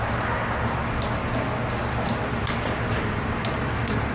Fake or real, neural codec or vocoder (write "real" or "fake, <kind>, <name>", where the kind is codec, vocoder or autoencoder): real